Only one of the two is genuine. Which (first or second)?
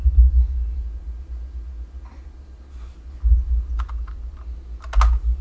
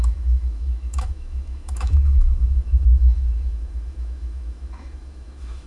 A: first